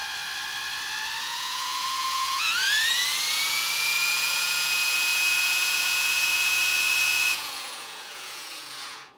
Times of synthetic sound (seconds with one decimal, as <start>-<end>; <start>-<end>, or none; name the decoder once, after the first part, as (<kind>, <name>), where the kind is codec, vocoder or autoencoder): 1.2-2.5 (vocoder, Vocos); 3.3-9.2